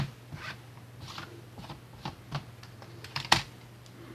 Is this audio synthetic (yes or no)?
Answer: no